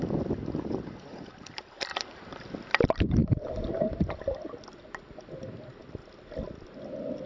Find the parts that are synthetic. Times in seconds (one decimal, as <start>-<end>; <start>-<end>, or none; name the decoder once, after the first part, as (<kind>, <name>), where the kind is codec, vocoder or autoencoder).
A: none